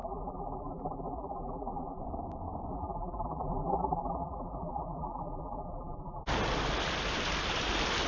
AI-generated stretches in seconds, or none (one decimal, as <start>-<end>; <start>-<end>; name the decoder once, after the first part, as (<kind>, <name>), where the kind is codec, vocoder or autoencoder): 0.0-2.0 (vocoder, BigVGAN v2); 2.7-6.2